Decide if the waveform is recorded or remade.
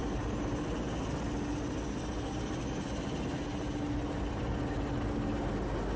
recorded